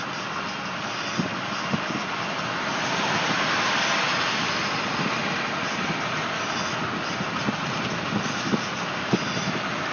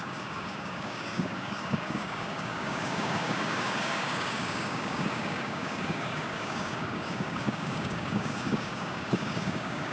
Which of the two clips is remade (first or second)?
second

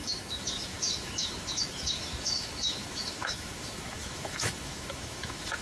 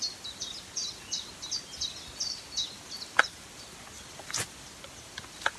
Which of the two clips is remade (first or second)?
first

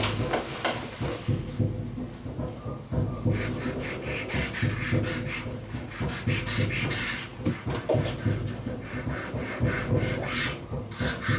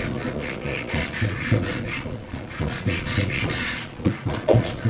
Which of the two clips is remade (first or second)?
second